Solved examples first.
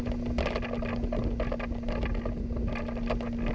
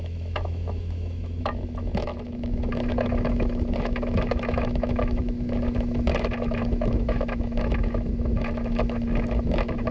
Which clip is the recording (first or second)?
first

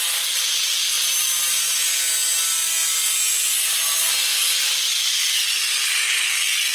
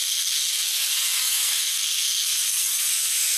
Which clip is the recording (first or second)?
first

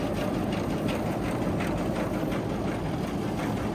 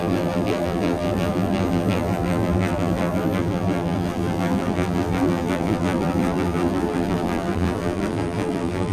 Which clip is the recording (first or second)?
first